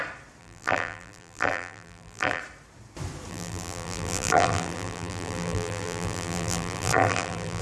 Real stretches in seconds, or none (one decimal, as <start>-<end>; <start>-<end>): 0.0-0.4; 2.4-3.3